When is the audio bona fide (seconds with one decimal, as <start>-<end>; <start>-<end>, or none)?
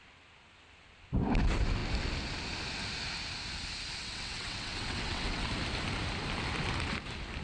0.0-4.0; 5.5-7.4